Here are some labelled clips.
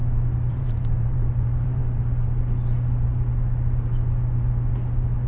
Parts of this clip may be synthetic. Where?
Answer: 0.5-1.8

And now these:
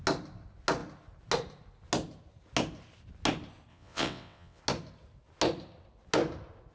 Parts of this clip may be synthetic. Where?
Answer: 3.7-4.6

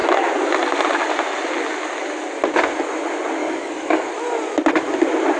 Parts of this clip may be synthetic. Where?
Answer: 3.4-4.1